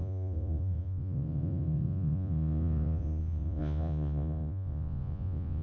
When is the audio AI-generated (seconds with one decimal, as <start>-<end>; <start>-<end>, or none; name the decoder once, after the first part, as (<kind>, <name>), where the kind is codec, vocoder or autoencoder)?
0.0-5.6 (vocoder, Vocos)